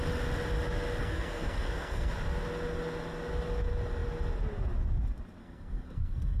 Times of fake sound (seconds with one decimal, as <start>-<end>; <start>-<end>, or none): 1.0-2.1; 5.4-6.4